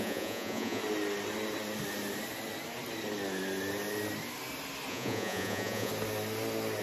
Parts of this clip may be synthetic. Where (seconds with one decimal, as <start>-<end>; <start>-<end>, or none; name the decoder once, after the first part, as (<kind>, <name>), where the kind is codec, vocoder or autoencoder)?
0.0-0.8 (vocoder, Vocos); 4.9-5.9